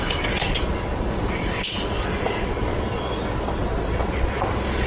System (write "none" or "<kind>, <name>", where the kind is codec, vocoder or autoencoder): vocoder, Vocos